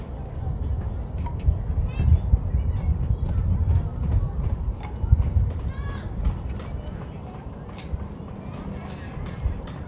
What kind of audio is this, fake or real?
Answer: real